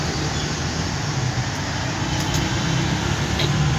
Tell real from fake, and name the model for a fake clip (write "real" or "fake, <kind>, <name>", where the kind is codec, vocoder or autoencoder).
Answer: real